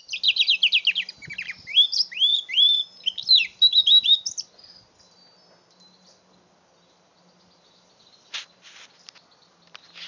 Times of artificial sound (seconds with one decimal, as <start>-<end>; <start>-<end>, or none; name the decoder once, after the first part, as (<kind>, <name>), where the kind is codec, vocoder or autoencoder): none

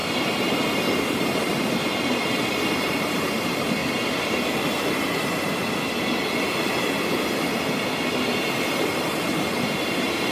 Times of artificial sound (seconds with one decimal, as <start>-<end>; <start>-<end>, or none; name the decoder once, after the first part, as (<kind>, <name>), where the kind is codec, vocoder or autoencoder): 1.0-3.8 (vocoder, BigVGAN v2); 8.5-10.3